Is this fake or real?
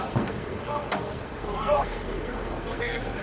fake